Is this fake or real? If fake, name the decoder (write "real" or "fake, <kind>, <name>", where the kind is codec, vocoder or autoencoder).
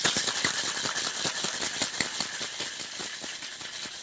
real